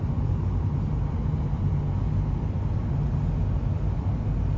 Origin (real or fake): real